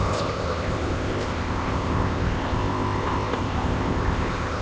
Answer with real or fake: fake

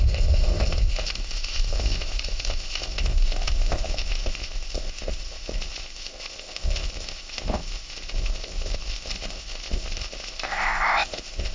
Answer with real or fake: fake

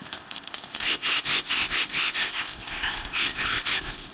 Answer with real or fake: fake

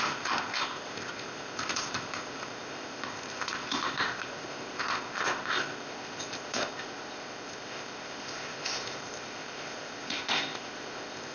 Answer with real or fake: fake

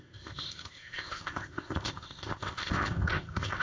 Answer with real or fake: fake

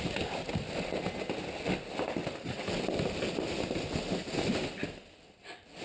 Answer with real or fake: real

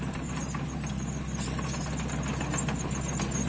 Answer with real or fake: real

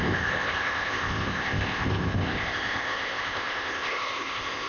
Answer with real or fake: fake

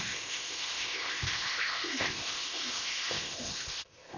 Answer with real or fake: fake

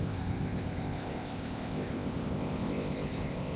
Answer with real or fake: fake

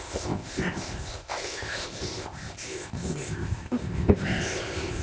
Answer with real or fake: fake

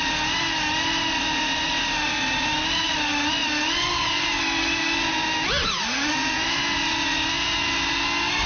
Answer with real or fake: real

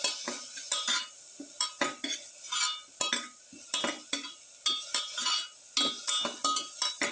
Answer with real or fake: real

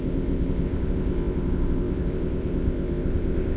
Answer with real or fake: fake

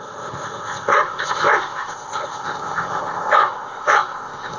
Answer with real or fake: fake